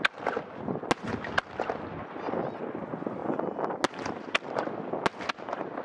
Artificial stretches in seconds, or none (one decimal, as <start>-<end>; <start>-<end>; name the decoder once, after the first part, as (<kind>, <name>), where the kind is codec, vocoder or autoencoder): none